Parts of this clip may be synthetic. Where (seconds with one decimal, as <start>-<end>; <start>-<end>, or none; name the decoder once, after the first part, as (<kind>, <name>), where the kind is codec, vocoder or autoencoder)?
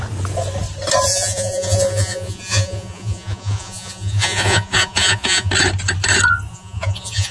1.1-5.5 (vocoder, Vocos); 6.5-7.3